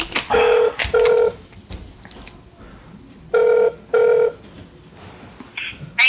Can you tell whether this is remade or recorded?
recorded